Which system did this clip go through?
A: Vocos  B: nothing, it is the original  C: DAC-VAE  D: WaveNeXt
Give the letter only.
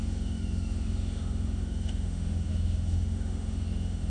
C